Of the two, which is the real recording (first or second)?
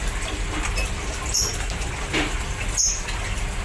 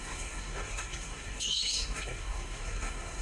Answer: first